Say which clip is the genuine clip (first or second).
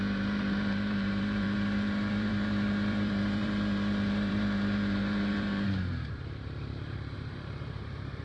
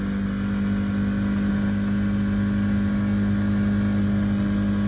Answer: second